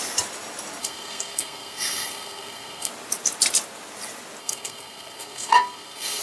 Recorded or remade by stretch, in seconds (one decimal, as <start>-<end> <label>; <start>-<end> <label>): 0.0-0.8 recorded; 0.8-2.9 remade; 2.9-4.4 recorded; 4.4-6.2 remade